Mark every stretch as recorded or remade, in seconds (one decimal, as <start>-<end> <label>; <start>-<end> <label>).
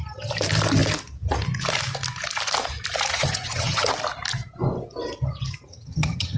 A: 0.0-3.1 recorded; 3.1-3.9 remade; 3.9-5.7 recorded; 5.7-6.4 remade